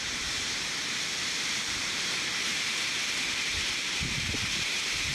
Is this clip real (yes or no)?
no